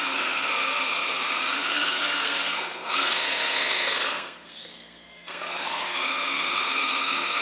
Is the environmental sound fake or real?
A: fake